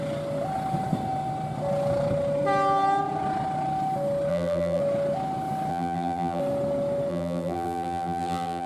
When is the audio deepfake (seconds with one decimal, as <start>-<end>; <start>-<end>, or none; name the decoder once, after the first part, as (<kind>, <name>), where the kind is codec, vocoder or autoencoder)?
4.3-4.8 (vocoder, BigVGAN v2); 5.7-6.4; 7.1-8.7